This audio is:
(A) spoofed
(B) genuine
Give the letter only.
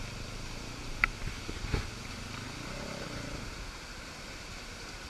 B